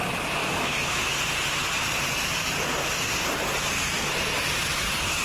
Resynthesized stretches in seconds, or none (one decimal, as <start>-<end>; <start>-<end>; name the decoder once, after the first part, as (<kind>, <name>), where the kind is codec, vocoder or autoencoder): 0.4-1.0 (autoencoder, DAC-VAE)